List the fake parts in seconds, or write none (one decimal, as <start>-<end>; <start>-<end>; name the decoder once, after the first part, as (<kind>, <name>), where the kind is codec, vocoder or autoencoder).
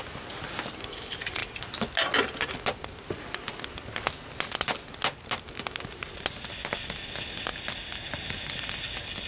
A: none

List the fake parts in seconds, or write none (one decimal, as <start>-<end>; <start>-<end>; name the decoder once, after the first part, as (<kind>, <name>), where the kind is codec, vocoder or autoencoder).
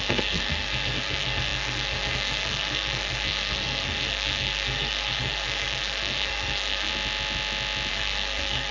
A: 0.0-6.9 (codec, SNAC); 7.9-8.7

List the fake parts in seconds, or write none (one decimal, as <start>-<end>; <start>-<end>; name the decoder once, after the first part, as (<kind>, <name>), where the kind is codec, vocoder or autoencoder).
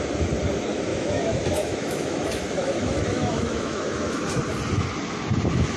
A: 0.9-4.4 (autoencoder, DAC-VAE)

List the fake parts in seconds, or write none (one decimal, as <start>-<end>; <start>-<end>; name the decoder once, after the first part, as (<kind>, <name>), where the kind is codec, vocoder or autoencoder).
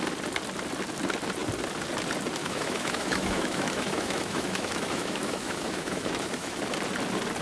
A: 2.4-6.6 (autoencoder, DAC-VAE)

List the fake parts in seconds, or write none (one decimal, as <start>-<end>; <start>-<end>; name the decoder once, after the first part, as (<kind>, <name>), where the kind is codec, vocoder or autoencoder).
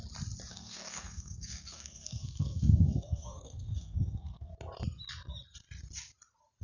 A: 0.5-4.5 (codec, SNAC)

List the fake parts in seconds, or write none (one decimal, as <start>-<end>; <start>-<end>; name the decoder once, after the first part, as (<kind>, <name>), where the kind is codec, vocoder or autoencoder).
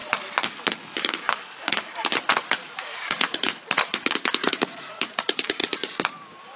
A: 2.2-5.6 (vocoder, Vocos)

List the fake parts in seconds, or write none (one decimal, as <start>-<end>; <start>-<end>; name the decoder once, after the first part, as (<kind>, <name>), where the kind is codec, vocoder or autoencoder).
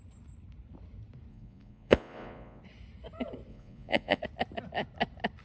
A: 1.3-2.6 (vocoder, Vocos); 3.5-4.2